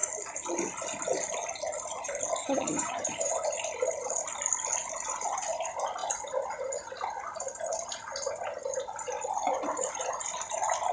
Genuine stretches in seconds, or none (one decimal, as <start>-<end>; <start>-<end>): 0.0-2.4; 3.3-10.9